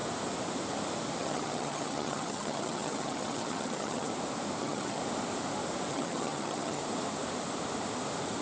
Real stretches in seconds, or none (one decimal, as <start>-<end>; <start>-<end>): 0.0-1.2; 4.1-4.6; 5.0-5.9; 6.8-8.4